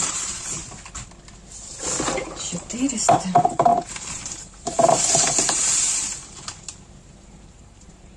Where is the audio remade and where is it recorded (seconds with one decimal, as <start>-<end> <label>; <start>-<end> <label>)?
0.0-0.6 remade; 0.6-2.2 recorded; 2.2-8.2 remade

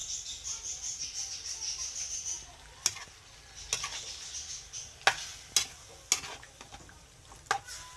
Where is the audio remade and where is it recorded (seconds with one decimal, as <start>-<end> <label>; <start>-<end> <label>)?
0.0-8.0 recorded

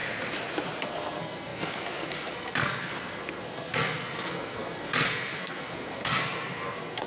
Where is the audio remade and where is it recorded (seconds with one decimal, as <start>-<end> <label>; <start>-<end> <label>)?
0.0-0.8 recorded; 0.8-7.1 remade

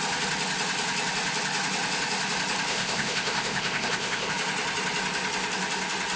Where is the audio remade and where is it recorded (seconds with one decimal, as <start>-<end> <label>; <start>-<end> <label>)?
0.0-2.7 recorded; 2.7-4.3 remade; 4.3-6.2 recorded

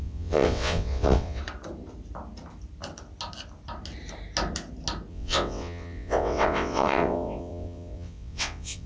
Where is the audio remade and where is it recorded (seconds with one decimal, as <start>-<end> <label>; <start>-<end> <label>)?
0.0-1.4 remade; 1.4-5.1 recorded; 5.1-8.9 remade

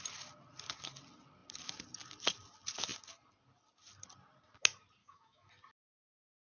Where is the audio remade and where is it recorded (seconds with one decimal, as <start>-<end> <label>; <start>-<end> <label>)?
0.0-5.0 recorded; 5.0-5.5 remade; 5.5-6.5 recorded